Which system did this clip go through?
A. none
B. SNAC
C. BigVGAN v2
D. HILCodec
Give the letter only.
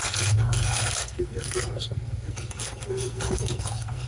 B